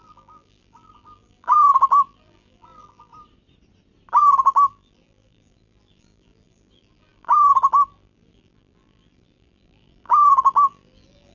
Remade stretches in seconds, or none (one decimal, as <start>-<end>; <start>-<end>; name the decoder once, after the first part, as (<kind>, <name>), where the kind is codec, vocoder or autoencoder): 0.0-3.1 (vocoder, BigVGAN v2); 4.2-11.3